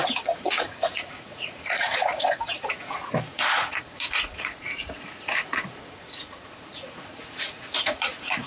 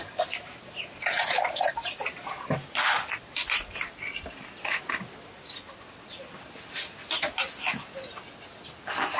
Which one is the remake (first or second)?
first